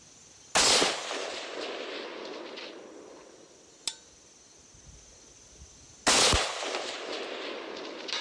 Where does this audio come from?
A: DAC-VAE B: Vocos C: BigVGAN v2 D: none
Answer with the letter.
D